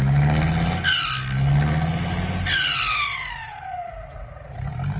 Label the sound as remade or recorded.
recorded